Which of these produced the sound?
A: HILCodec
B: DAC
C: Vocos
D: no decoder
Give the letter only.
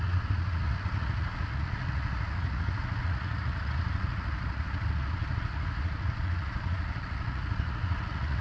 C